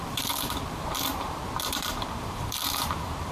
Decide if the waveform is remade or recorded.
remade